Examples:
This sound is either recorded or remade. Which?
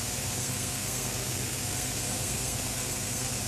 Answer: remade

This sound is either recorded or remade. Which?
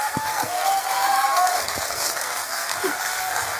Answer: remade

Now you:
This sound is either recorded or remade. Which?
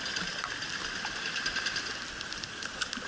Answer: recorded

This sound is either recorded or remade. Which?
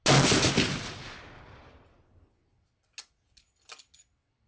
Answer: recorded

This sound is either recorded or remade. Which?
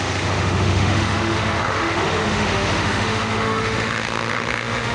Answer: remade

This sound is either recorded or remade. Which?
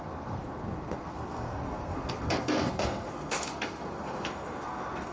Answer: remade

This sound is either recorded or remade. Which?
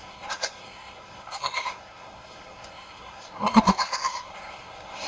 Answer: remade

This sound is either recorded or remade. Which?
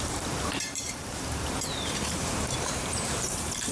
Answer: remade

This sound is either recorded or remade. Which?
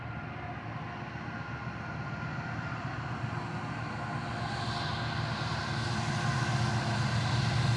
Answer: recorded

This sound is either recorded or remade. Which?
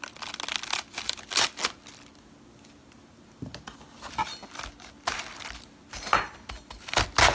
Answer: recorded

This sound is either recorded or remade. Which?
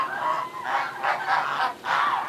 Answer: recorded